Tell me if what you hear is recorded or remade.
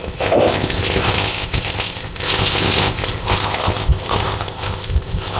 remade